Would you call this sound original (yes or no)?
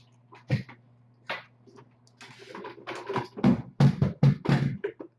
yes